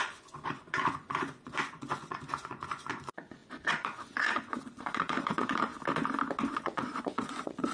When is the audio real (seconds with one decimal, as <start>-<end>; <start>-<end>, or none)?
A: 5.7-6.5